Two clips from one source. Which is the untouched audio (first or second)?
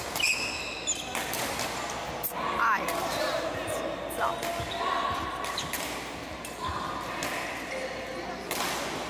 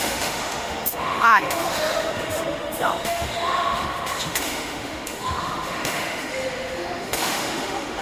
first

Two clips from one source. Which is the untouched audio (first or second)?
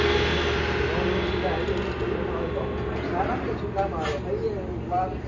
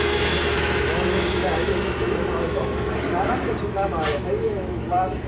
first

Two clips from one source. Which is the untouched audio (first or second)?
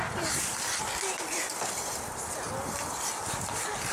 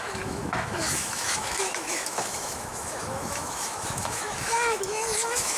first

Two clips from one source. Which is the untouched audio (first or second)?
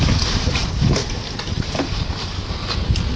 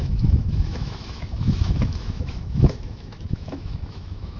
first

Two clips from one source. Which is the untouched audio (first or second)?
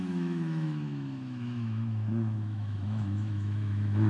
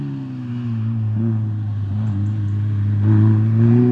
second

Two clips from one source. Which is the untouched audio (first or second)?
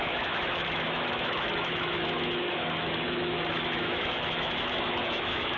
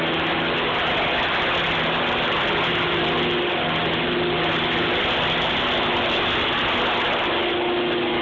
second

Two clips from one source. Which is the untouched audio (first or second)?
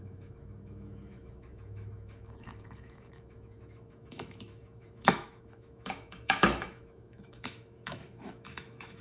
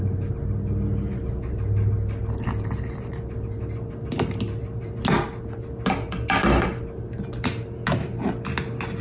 second